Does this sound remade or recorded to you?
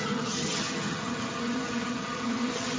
remade